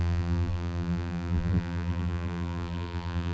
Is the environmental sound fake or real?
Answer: fake